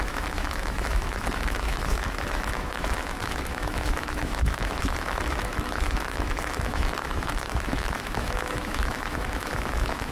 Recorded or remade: remade